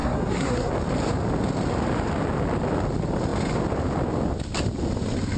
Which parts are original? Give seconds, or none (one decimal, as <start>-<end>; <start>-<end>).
0.7-5.4